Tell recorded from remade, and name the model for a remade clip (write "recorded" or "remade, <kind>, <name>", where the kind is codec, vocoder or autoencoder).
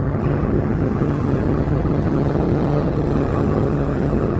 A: remade, vocoder, HiFi-GAN